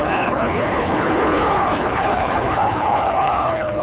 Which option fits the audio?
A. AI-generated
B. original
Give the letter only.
A